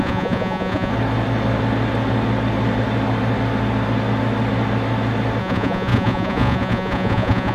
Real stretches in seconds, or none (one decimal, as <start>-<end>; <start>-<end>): 0.9-5.4